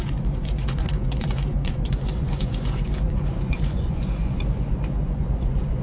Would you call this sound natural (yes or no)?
no